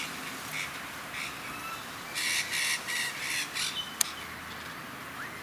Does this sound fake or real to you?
real